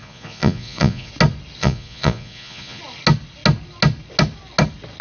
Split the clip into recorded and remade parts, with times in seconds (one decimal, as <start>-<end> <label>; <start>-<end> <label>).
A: 0.0-1.1 remade; 1.1-1.6 recorded; 1.6-2.8 remade; 2.8-5.0 recorded